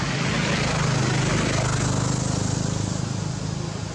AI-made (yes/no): no